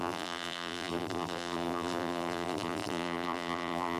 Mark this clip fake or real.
fake